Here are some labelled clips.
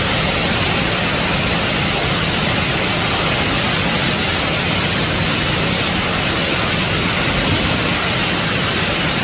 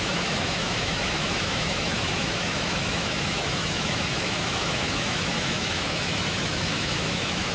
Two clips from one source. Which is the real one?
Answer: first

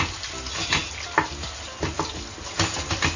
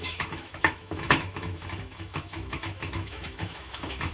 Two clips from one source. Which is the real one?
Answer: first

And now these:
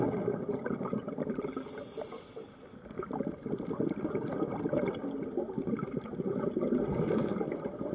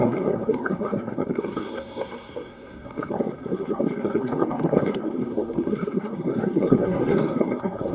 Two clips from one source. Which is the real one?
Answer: first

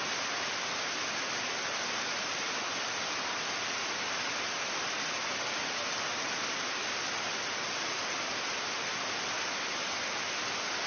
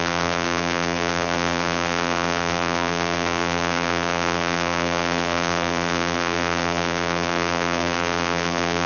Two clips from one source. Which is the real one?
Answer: first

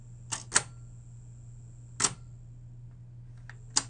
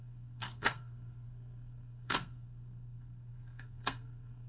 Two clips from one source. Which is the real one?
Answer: first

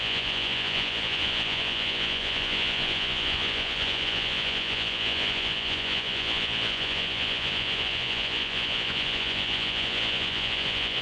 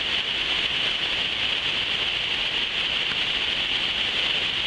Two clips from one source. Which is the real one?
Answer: second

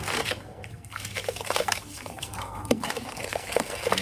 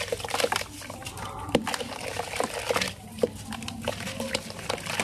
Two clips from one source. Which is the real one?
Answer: second